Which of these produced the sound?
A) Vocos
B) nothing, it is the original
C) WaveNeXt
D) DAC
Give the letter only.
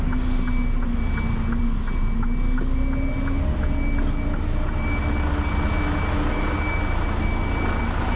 B